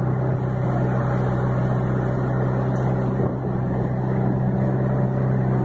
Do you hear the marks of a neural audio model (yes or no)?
no